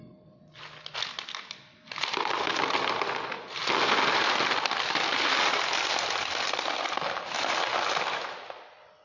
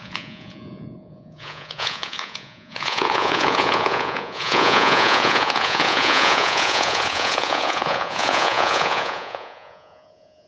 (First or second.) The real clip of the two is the first